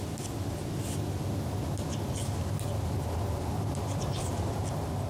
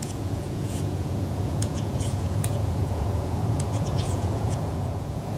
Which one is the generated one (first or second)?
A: second